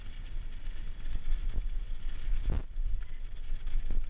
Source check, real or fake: real